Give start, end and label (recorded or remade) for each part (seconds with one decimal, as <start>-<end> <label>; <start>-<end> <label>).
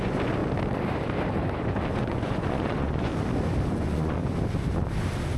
0.0-0.4 remade; 0.4-1.9 recorded; 1.9-3.1 remade; 3.1-3.7 recorded; 3.7-4.2 remade; 4.2-5.4 recorded